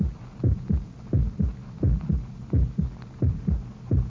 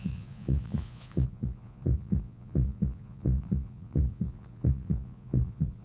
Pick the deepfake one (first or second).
second